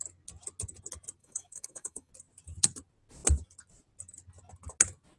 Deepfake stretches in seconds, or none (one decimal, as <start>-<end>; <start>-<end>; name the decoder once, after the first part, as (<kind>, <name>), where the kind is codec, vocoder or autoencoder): 1.2-2.1 (codec, DAC)